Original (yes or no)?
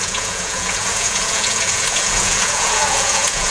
no